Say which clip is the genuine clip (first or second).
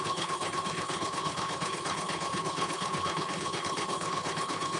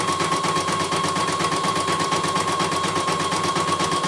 second